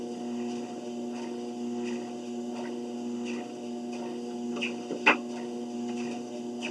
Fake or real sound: real